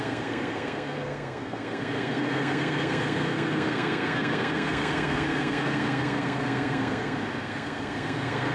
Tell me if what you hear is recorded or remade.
remade